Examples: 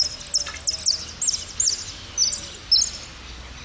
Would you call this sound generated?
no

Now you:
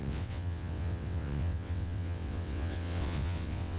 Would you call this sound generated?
yes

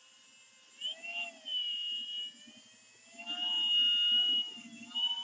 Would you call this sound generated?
no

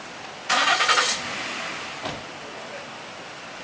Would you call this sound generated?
no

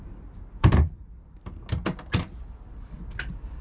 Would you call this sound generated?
no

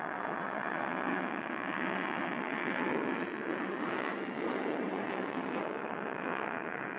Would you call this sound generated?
yes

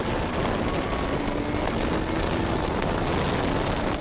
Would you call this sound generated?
no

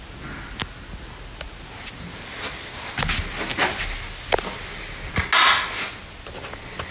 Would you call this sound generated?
no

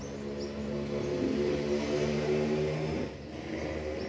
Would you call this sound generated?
no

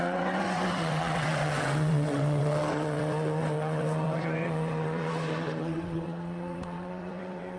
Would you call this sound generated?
yes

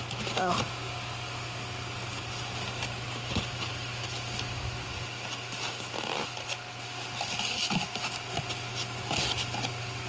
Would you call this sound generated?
no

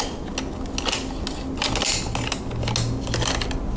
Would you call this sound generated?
no